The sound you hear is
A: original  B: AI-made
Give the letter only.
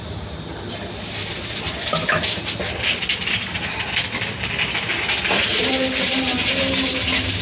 A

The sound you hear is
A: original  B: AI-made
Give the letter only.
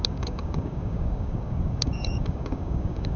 B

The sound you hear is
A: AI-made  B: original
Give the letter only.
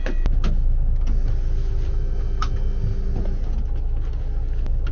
B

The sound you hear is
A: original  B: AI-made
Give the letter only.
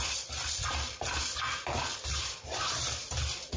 A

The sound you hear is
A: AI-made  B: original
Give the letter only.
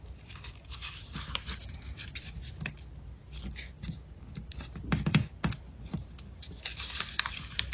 B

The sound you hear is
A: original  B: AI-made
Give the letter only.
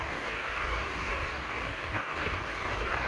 B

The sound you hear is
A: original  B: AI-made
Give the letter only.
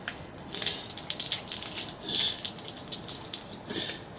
A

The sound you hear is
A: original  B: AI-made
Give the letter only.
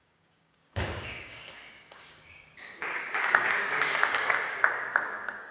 B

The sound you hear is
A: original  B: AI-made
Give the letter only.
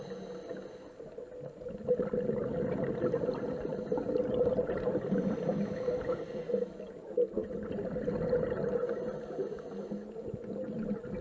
A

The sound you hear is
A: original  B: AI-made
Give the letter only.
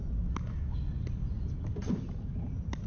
A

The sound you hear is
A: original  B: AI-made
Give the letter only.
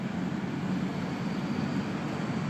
A